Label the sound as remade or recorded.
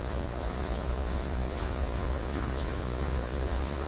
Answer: remade